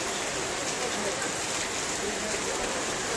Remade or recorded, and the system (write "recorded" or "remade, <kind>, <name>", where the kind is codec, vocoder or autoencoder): recorded